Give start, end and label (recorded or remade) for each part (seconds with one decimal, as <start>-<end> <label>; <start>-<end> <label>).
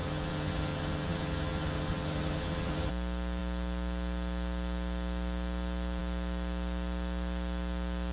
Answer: 0.0-2.9 remade; 2.9-8.1 recorded